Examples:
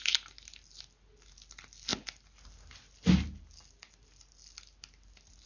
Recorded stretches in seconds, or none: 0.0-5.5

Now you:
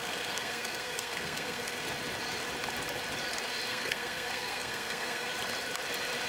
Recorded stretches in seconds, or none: 1.8-3.7; 5.3-6.3

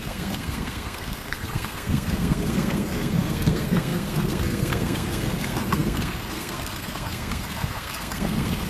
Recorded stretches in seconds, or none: none

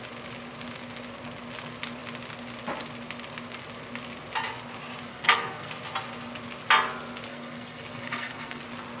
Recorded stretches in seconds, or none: 0.0-5.1; 5.7-7.3; 8.6-9.0

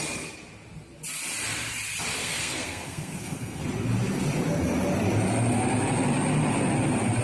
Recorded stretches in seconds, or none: 0.0-2.2; 3.6-7.2

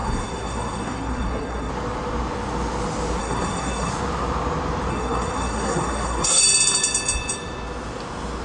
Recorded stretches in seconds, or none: 1.7-3.2; 3.9-4.9; 6.4-8.4

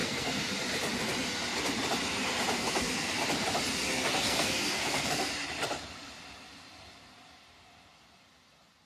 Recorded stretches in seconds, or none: 0.5-2.6; 3.1-3.9; 5.3-8.9

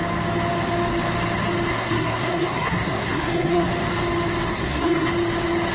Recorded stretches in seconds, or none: 0.0-1.7; 3.7-4.5; 5.1-5.7